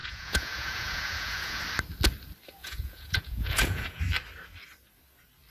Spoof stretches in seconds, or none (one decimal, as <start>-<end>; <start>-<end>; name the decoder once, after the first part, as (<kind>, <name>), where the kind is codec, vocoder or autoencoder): 0.0-1.6 (vocoder, Vocos); 2.6-4.0